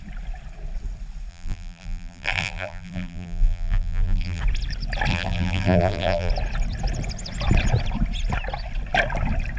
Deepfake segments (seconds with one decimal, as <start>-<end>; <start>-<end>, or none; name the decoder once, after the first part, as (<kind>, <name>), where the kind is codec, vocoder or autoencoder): 1.3-4.4 (vocoder, BigVGAN v2); 5.1-6.3